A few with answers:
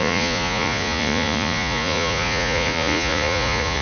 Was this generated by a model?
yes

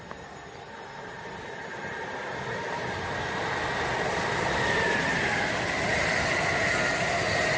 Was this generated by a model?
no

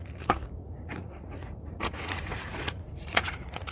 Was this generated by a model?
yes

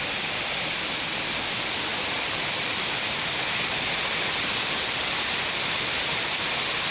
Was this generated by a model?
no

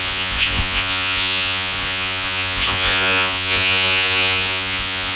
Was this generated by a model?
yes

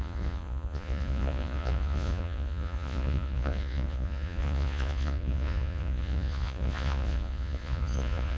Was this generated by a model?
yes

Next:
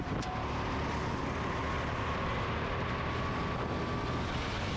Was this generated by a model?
no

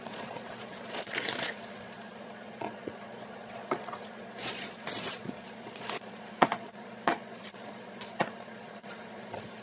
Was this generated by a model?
yes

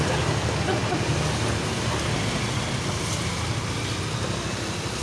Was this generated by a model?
no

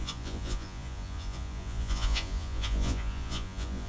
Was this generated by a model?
yes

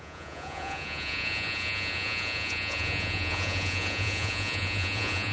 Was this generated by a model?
yes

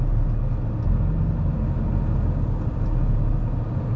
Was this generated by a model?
no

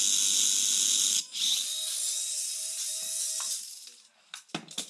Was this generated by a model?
no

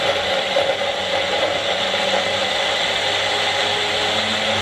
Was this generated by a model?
no